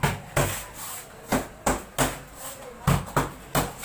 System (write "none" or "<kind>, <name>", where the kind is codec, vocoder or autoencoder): none